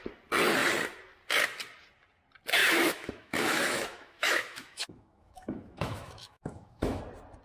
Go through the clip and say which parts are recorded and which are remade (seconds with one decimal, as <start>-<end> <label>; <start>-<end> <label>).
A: 0.0-2.6 recorded; 2.6-7.0 remade; 7.0-7.4 recorded